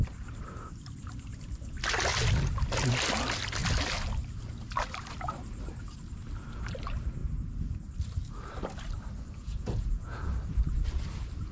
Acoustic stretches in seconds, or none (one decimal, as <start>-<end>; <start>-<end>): 0.0-9.4; 10.3-11.5